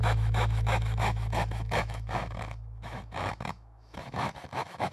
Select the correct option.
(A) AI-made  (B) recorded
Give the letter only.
A